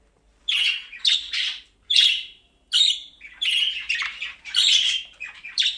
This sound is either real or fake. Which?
fake